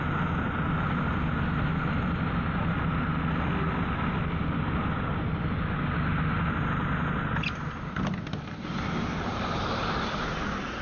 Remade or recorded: recorded